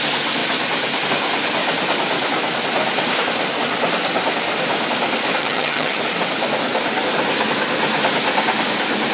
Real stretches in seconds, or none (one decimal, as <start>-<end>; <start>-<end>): 0.0-5.4; 6.0-9.1